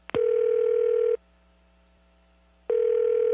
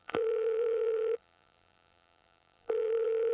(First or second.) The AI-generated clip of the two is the second